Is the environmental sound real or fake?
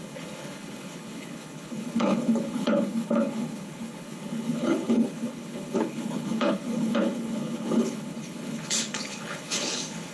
fake